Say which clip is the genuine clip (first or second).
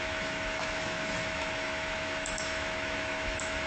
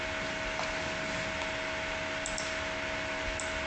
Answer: second